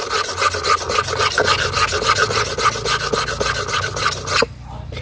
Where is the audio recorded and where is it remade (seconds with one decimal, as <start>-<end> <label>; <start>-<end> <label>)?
0.0-1.4 remade; 1.4-4.4 recorded; 4.4-5.0 remade